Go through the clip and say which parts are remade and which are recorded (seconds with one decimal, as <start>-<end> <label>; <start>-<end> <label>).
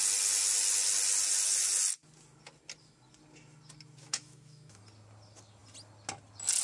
0.0-4.0 recorded; 4.0-4.8 remade; 4.8-6.6 recorded